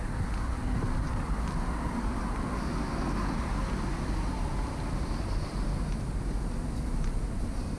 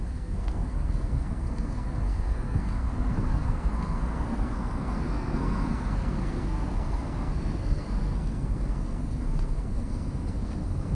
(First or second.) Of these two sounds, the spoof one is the second